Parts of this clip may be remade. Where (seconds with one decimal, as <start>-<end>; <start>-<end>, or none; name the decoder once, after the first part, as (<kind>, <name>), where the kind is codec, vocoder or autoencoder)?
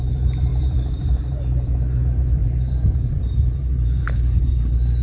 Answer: 0.0-5.0 (vocoder, BigVGAN v2)